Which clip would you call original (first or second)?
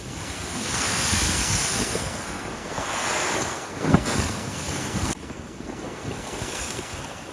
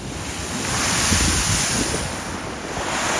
second